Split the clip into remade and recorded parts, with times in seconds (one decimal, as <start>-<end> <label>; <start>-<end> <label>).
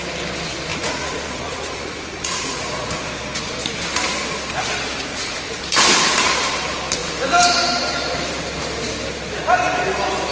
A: 0.0-0.7 recorded; 0.7-2.9 remade; 2.9-5.1 recorded; 5.1-5.6 remade; 5.6-10.3 recorded